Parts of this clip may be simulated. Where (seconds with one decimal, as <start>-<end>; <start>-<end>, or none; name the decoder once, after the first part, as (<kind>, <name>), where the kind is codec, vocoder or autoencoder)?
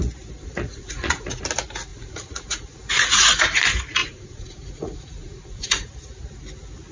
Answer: 0.4-1.4 (vocoder, Vocos); 1.9-3.4; 4.0-5.9